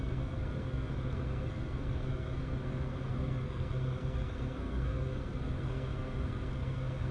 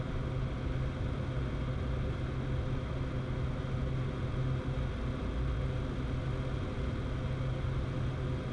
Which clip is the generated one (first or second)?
first